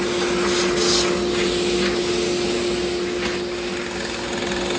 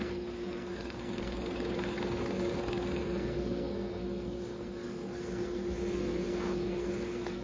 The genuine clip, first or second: first